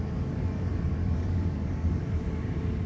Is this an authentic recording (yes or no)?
no